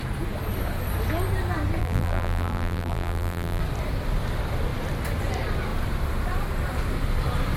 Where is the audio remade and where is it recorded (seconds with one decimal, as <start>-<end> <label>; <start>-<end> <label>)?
0.0-1.8 recorded; 1.8-3.6 remade; 3.6-7.6 recorded